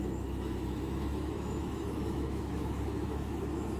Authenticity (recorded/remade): remade